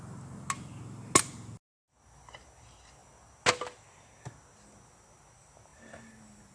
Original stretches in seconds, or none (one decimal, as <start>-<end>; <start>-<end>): 0.0-6.5